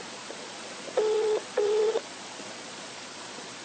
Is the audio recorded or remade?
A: remade